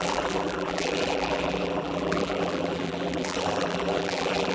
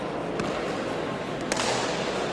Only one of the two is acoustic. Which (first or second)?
second